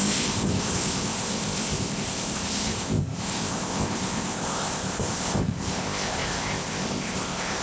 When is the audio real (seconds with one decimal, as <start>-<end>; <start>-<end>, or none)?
none